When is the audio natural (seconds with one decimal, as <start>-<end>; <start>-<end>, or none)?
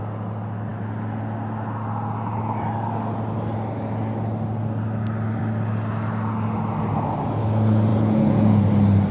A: 0.0-7.9; 8.6-9.1